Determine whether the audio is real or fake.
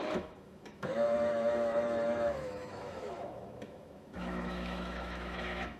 fake